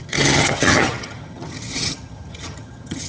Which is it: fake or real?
fake